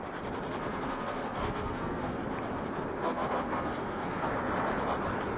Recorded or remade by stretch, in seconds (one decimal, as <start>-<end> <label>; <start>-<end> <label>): 0.0-0.6 recorded; 0.6-2.2 remade; 2.2-3.0 recorded; 3.0-4.3 remade; 4.3-5.4 recorded